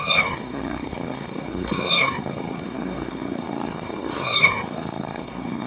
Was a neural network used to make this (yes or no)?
yes